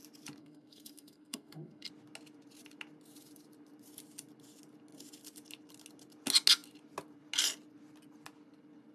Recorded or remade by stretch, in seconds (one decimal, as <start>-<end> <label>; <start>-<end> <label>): 0.0-0.4 recorded; 0.4-1.9 remade; 1.9-8.9 recorded